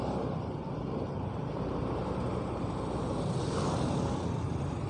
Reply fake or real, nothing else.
fake